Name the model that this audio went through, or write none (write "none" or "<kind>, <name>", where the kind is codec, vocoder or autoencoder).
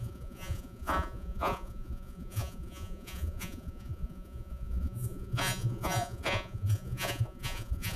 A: vocoder, Vocos